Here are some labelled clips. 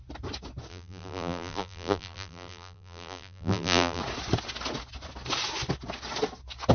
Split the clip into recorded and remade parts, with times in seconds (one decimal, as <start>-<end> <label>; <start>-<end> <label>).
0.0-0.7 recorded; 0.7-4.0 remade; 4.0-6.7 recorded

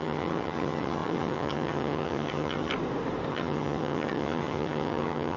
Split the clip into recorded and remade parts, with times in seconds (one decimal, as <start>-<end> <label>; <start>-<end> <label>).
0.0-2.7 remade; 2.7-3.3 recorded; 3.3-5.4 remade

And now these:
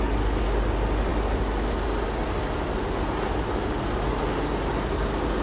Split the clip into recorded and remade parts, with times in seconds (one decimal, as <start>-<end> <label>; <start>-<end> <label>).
0.0-5.4 recorded

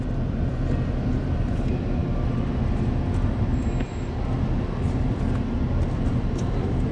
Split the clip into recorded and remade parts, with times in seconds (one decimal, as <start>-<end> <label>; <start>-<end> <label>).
0.0-2.0 remade; 2.0-6.1 recorded; 6.1-6.9 remade

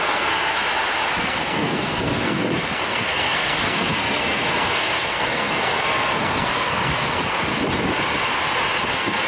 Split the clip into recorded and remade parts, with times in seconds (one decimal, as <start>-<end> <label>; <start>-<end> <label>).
0.0-0.6 remade; 0.6-1.2 recorded; 1.2-7.5 remade; 7.5-8.9 recorded; 8.9-9.3 remade